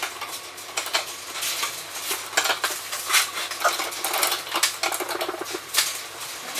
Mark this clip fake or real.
real